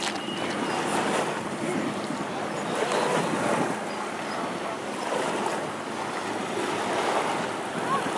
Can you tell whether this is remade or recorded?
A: recorded